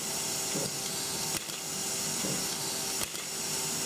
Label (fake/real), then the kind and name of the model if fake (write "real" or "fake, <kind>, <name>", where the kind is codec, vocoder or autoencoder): real